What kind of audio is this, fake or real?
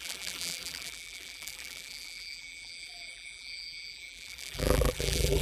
fake